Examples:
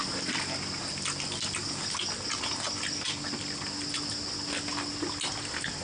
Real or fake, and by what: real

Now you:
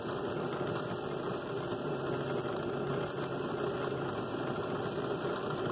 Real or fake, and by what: real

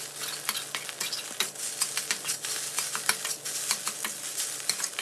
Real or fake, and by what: real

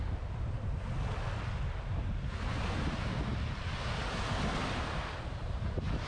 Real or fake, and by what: real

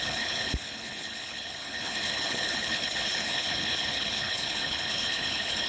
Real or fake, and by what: fake, codec, HILCodec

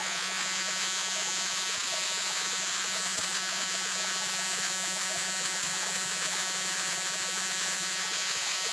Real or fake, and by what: fake, vocoder, Vocos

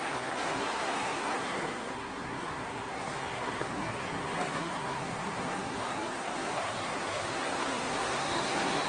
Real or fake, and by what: fake, codec, SNAC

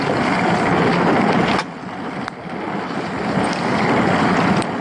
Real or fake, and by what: real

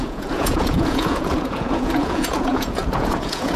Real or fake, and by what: fake, vocoder, Vocos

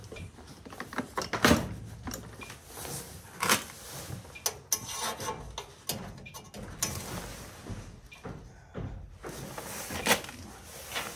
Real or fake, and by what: real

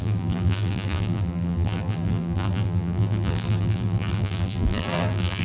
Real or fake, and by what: fake, vocoder, BigVGAN v2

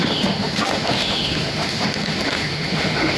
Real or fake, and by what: fake, autoencoder, DAC-VAE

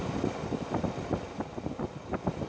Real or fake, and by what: real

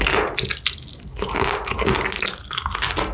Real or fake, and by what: real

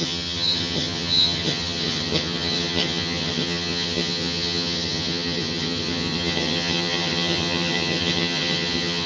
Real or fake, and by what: fake, vocoder, HiFi-GAN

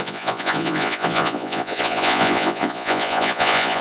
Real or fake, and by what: fake, vocoder, Vocos